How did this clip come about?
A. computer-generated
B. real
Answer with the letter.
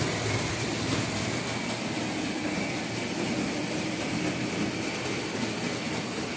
B